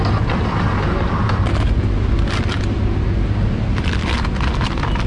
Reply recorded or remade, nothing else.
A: recorded